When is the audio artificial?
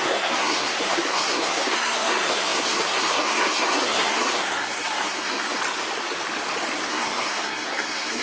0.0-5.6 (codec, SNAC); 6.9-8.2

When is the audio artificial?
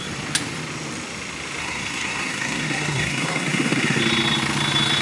1.6-4.0 (codec, SNAC)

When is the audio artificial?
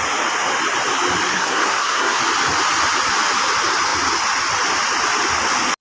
1.3-2.2 (codec, SNAC)